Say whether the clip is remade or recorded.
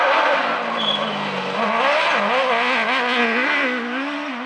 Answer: recorded